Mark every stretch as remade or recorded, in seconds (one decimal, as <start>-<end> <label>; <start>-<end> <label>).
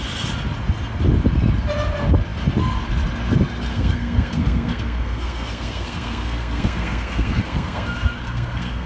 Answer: 0.0-3.7 recorded; 3.7-8.9 remade